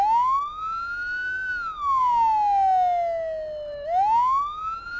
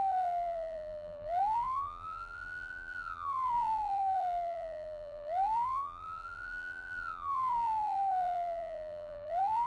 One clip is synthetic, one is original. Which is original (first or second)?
first